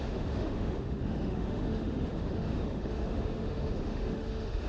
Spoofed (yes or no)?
yes